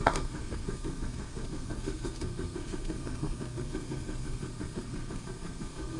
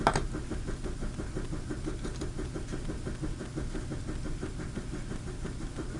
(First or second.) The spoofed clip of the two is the first